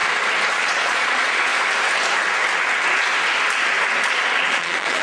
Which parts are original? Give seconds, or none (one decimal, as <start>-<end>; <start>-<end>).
0.0-0.5; 1.5-4.5